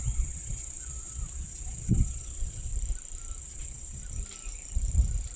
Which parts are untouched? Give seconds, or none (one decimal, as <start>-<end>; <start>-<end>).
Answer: 2.7-3.4; 4.0-5.4